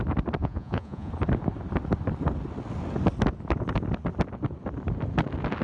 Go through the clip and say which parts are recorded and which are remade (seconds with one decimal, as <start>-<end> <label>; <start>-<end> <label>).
0.0-0.4 recorded; 0.4-1.1 remade; 1.1-5.6 recorded